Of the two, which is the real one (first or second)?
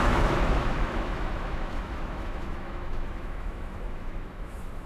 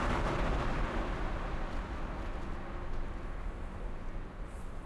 second